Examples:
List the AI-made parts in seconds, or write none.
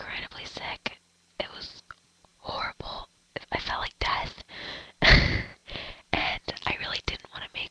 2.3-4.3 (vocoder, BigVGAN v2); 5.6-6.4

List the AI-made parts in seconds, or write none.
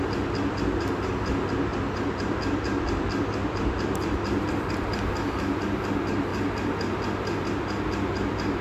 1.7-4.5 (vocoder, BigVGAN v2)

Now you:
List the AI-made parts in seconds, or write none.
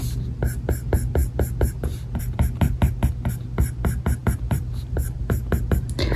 4.2-4.9 (vocoder, BigVGAN v2)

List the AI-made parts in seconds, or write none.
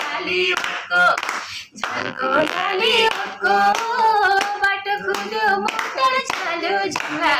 2.0-2.8 (vocoder, BigVGAN v2)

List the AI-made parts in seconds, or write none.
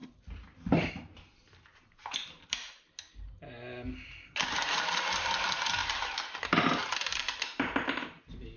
5.8-7.6 (vocoder, BigVGAN v2)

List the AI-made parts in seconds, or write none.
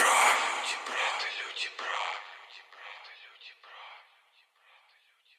1.9-3.0 (vocoder, BigVGAN v2)